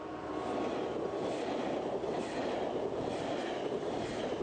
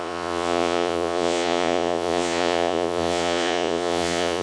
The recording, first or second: first